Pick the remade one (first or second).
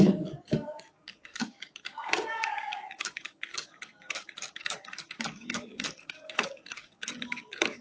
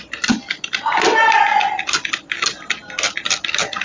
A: first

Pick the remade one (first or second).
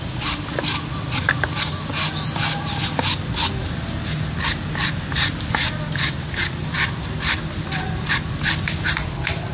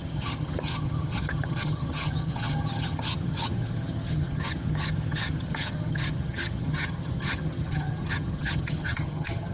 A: second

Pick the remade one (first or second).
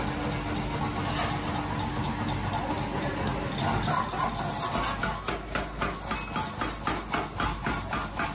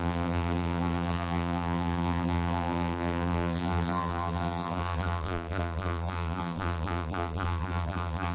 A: second